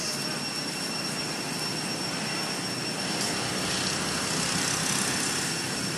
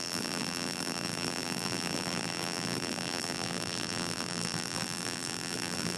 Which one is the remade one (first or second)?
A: second